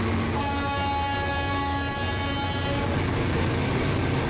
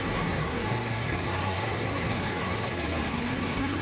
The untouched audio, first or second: first